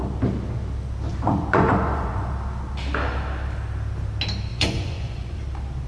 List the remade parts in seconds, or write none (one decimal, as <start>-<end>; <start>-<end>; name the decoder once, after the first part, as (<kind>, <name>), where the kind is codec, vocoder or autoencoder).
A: 1.1-2.3 (vocoder, Vocos); 4.5-5.4